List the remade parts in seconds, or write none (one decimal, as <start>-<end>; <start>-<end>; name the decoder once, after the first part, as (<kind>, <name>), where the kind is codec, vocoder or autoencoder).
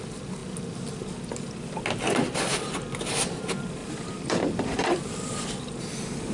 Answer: 3.8-5.8 (vocoder, BigVGAN v2)